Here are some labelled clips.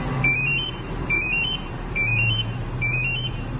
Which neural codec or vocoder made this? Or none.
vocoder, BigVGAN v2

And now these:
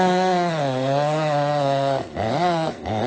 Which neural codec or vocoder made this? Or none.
codec, SNAC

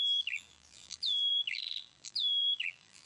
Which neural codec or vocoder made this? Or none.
vocoder, BigVGAN v2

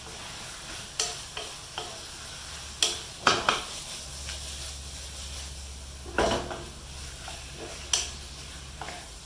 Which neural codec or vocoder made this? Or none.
none